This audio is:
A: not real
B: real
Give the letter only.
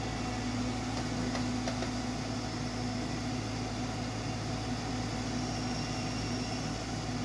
B